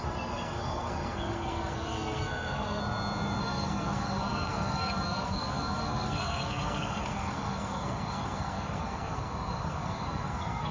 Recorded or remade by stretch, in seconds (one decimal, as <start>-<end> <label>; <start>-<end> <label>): 0.0-2.8 remade; 2.8-3.4 recorded; 3.4-10.7 remade